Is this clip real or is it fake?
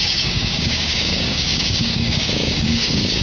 fake